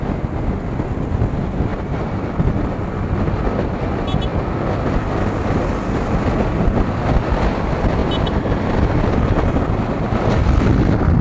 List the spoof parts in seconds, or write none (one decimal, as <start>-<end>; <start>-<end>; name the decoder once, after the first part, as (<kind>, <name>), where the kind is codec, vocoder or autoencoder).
1.7-2.8 (vocoder, BigVGAN v2); 8.0-9.7